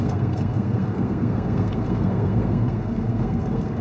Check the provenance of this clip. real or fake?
fake